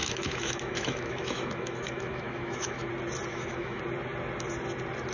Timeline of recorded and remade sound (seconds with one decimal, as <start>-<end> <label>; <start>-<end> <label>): 0.0-2.9 remade; 2.9-3.3 recorded; 3.3-3.8 remade; 3.8-5.1 recorded